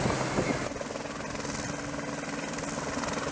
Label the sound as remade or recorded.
recorded